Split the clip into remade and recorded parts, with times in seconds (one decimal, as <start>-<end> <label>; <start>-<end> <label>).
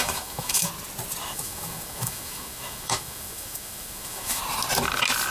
0.0-0.7 remade; 0.7-1.2 recorded; 1.2-4.4 remade; 4.4-5.3 recorded